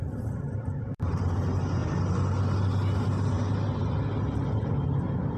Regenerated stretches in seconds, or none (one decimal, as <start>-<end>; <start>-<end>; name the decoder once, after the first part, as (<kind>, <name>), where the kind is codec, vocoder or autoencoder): 0.0-1.2 (vocoder, BigVGAN v2)